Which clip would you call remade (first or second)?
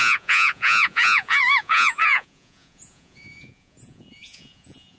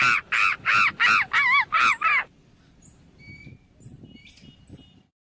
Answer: first